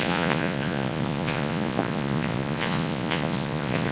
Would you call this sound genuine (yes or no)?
no